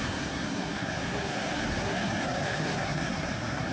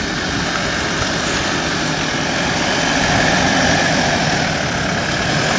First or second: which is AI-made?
first